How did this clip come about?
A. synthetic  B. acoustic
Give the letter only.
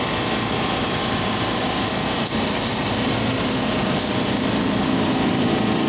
B